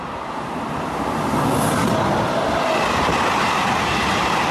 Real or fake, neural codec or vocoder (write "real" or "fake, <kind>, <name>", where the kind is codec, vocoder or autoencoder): real